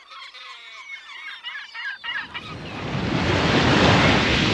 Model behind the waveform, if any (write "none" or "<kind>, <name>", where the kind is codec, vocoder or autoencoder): none